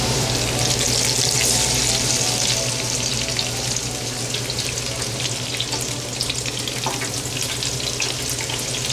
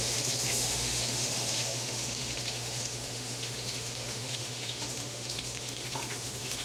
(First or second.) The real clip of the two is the first